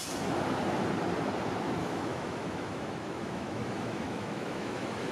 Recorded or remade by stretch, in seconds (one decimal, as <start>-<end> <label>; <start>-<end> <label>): 0.0-1.8 recorded; 1.8-5.1 remade